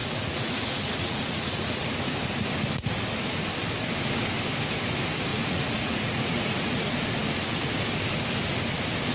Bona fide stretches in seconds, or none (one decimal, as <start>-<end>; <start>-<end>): 1.9-5.3; 6.8-9.1